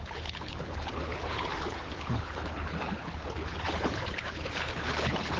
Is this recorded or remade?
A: remade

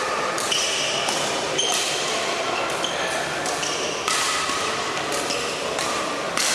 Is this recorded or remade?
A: remade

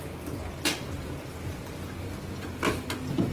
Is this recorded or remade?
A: recorded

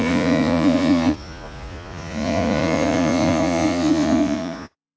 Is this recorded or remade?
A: remade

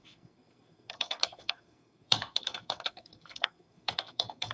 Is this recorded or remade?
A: remade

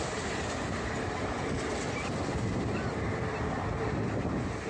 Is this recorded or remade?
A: recorded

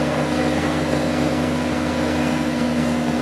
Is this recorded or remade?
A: remade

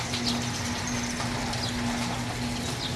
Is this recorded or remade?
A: remade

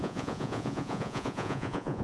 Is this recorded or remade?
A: remade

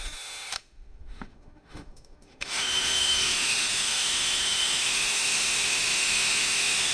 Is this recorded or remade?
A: remade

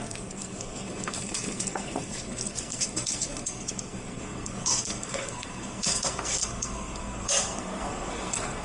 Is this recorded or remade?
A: remade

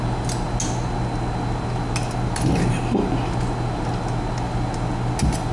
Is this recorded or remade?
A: recorded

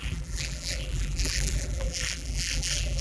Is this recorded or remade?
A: remade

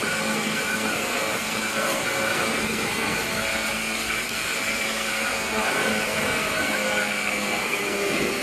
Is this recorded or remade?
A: remade